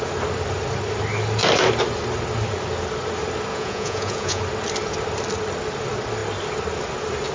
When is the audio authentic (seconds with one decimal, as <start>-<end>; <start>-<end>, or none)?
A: 0.0-3.5; 4.4-7.3